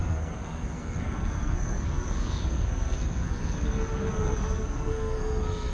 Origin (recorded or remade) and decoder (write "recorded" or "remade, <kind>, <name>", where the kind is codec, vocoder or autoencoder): remade, codec, SNAC